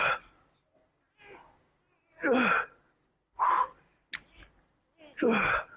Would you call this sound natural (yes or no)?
yes